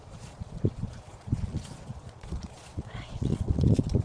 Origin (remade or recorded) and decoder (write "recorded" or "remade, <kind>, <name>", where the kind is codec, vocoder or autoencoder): remade, vocoder, Vocos